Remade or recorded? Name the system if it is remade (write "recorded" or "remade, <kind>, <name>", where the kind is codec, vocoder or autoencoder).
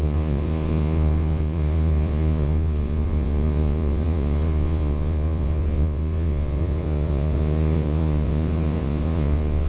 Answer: remade, vocoder, Vocos